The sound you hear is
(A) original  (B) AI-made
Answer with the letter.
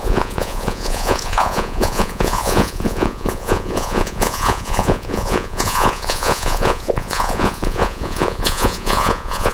B